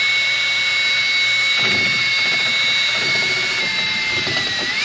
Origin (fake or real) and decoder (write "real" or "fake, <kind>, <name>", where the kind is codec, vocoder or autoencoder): fake, vocoder, BigVGAN v2